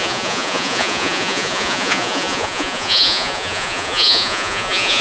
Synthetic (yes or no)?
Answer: yes